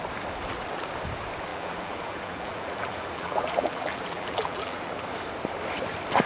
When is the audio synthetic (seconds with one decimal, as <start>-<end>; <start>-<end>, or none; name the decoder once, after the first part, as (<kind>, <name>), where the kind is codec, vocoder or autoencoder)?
1.5-4.9 (vocoder, BigVGAN v2)